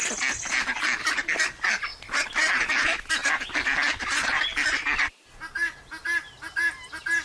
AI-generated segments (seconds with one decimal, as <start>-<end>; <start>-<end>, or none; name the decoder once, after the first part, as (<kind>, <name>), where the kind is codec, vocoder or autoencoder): none